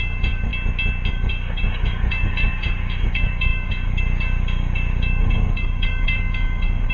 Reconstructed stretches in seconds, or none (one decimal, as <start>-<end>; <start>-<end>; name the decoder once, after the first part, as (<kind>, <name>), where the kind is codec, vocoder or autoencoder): 0.0-0.5 (codec, DAC); 1.1-6.9

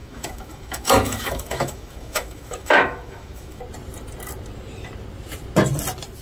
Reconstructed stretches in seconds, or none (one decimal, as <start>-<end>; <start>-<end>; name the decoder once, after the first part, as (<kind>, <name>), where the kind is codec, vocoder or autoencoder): 0.0-3.6 (autoencoder, DAC-VAE)

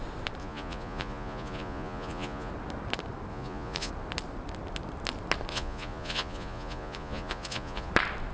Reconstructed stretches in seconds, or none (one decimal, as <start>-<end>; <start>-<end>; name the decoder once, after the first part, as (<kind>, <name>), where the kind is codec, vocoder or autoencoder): 0.4-2.5 (vocoder, Vocos); 3.3-3.9; 5.5-7.9

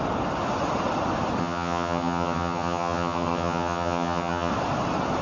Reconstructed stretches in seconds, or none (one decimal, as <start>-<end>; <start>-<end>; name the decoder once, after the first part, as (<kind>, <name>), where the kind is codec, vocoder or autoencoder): 1.4-4.5 (vocoder, HiFi-GAN)

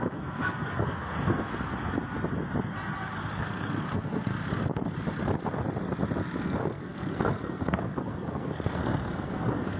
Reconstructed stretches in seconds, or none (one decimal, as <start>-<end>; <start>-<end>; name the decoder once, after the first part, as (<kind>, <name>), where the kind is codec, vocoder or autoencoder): 0.0-1.5 (codec, SNAC); 3.3-4.3; 6.4-9.8

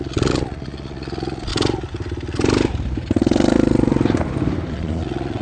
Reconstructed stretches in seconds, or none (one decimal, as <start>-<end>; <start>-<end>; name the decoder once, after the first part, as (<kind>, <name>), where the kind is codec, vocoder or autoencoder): 0.0-1.5 (vocoder, Vocos); 4.7-5.4

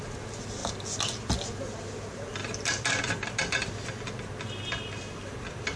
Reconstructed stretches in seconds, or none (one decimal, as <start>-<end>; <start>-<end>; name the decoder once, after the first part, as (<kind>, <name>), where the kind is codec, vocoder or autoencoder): none